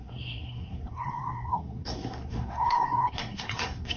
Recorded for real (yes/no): no